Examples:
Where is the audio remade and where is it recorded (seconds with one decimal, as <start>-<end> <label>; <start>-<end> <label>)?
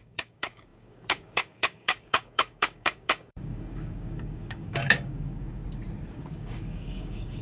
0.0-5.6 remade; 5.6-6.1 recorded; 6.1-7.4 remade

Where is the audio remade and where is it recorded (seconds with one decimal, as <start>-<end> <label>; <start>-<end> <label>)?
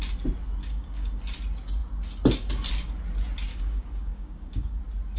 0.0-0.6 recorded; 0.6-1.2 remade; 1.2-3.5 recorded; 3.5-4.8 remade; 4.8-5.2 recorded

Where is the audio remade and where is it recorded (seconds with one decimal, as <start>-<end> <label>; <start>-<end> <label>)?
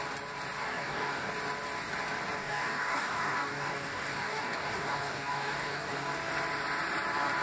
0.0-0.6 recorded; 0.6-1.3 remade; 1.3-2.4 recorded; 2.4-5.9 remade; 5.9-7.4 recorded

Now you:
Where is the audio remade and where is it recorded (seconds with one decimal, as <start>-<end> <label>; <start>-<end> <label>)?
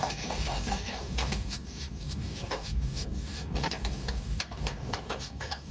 0.0-5.7 remade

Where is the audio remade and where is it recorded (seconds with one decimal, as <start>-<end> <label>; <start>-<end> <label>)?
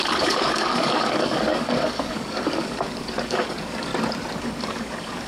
0.0-3.9 remade; 3.9-4.4 recorded; 4.4-5.3 remade